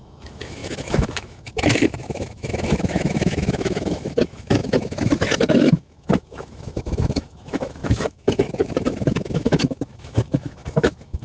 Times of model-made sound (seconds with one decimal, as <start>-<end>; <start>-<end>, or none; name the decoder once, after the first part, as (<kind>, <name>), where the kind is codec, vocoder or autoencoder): 0.0-11.2 (autoencoder, DAC-VAE)